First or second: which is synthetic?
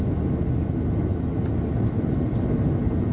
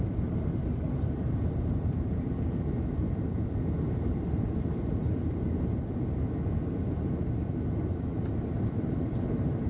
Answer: second